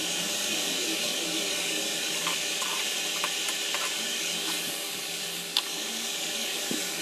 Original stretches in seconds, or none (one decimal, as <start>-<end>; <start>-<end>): 2.7-3.9